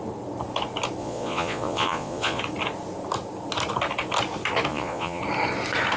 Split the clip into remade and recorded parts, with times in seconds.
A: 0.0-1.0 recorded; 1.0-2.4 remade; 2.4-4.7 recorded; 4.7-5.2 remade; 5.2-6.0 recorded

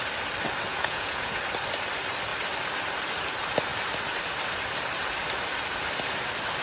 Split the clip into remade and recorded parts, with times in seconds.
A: 0.0-0.7 recorded; 0.7-1.4 remade; 1.4-6.6 recorded

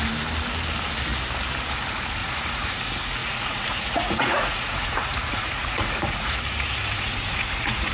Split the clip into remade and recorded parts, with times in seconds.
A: 0.0-2.2 recorded; 2.2-2.7 remade; 2.7-3.2 recorded; 3.2-7.9 remade

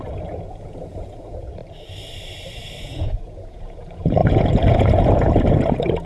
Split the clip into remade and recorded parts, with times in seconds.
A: 0.0-1.6 remade; 1.6-2.8 recorded; 2.8-6.1 remade

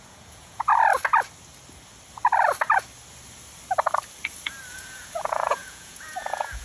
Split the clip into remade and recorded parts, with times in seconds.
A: 0.0-0.7 remade; 0.7-4.7 recorded; 4.7-6.6 remade